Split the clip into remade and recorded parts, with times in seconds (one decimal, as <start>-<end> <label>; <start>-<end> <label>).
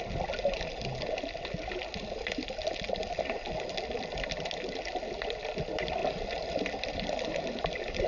0.0-6.0 recorded; 6.0-8.1 remade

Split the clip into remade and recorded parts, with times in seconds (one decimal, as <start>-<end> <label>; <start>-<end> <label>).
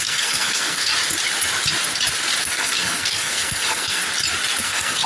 0.0-0.9 remade; 0.9-2.4 recorded; 2.4-4.0 remade; 4.0-4.6 recorded; 4.6-5.1 remade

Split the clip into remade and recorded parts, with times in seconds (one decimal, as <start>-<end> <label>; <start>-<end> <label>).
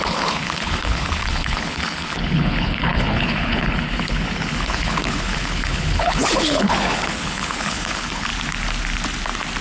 0.0-8.3 remade; 8.3-9.6 recorded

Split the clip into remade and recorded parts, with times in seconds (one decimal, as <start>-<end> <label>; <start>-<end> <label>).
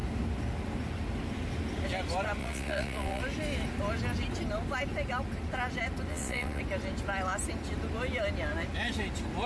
0.0-2.4 recorded; 2.4-3.2 remade; 3.2-6.1 recorded; 6.1-6.6 remade; 6.6-9.5 recorded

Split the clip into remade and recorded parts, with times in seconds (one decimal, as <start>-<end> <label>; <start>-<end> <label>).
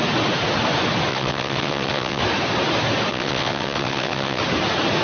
0.0-1.1 recorded; 1.1-2.2 remade; 2.2-3.1 recorded; 3.1-4.4 remade; 4.4-5.0 recorded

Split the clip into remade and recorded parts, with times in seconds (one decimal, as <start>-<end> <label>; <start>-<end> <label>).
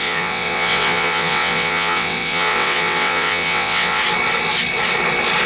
0.0-4.0 remade; 4.0-5.5 recorded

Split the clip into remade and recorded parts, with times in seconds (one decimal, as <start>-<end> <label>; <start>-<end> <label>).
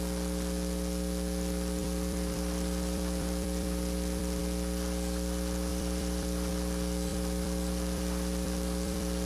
0.0-1.8 recorded; 1.8-4.4 remade; 4.4-5.7 recorded; 5.7-6.5 remade; 6.5-7.1 recorded; 7.1-9.3 remade